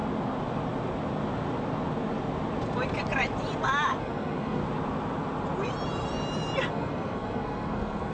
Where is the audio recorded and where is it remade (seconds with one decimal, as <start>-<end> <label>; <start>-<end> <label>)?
0.0-4.0 recorded; 4.0-4.6 remade; 4.6-6.7 recorded; 6.7-8.1 remade